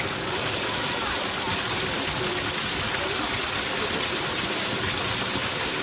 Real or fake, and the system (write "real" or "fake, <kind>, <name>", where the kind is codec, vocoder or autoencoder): fake, vocoder, BigVGAN v2